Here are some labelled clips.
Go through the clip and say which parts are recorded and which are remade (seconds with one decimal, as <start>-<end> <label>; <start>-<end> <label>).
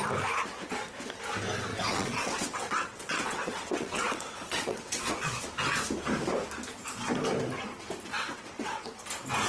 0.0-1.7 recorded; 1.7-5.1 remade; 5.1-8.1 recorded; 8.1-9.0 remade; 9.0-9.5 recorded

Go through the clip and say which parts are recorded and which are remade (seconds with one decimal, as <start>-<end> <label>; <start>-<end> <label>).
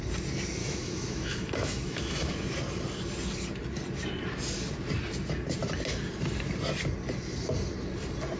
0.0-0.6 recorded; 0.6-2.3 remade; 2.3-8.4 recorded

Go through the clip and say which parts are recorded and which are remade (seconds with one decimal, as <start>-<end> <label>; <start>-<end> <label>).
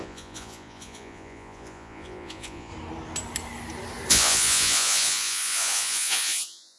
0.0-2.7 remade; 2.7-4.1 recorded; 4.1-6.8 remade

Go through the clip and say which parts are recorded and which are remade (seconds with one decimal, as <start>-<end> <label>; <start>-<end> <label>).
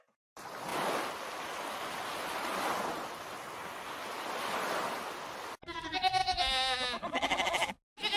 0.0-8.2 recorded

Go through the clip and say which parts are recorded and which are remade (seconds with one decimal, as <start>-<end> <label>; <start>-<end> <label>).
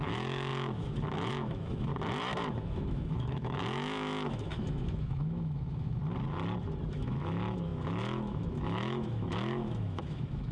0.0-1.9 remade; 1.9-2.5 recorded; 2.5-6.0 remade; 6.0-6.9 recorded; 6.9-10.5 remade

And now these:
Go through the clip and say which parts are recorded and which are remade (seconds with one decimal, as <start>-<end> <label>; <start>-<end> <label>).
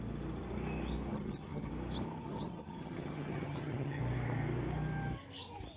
0.0-1.1 recorded; 1.1-1.7 remade; 1.7-2.2 recorded; 2.2-4.0 remade; 4.0-5.8 recorded